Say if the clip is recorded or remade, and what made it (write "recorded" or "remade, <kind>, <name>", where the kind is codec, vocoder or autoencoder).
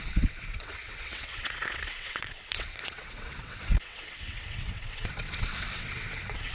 remade, vocoder, WaveNeXt